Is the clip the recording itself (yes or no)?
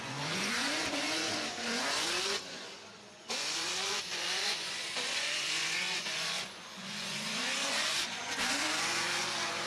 no